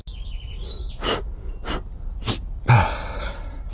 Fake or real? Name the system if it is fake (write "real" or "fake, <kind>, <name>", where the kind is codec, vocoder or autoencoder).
real